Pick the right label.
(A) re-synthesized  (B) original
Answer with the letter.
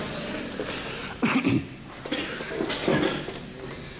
B